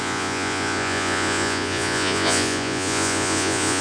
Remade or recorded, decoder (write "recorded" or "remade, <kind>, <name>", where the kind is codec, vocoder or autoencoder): remade, vocoder, Vocos